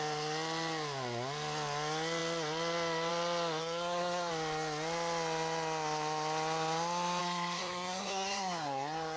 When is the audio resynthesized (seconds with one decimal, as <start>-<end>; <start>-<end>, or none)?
3.6-4.3; 7.2-9.2